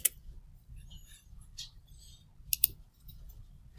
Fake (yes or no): no